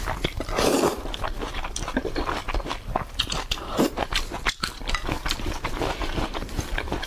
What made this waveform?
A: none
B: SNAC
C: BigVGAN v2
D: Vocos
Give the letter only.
C